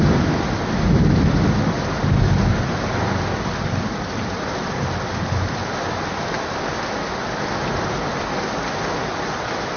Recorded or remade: recorded